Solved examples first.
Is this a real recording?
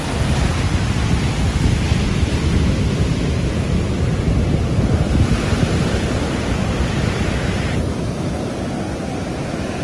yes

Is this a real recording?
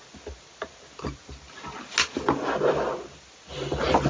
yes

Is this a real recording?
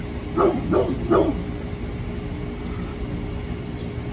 yes